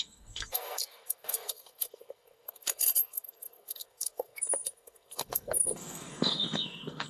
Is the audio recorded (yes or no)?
no